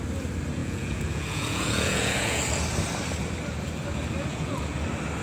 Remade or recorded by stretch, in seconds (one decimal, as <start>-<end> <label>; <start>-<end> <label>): 0.0-0.6 recorded; 0.6-2.4 remade; 2.4-4.3 recorded; 4.3-4.8 remade; 4.8-5.2 recorded